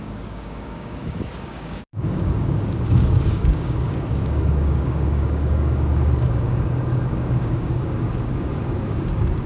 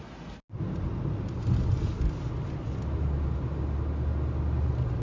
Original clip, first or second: second